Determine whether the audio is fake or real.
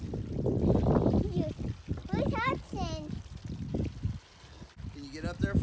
real